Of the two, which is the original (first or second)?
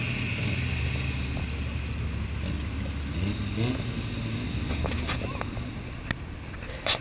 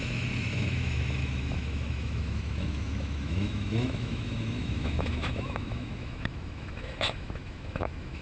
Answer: first